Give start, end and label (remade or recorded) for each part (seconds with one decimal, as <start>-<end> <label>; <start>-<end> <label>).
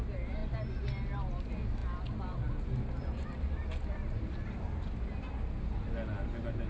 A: 0.0-6.7 recorded